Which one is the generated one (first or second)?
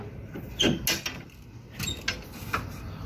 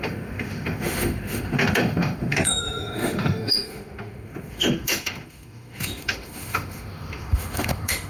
second